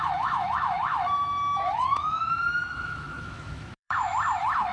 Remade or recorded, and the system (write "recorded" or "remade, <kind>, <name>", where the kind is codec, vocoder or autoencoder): remade, autoencoder, DAC-VAE